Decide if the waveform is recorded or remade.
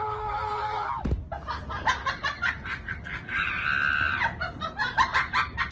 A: recorded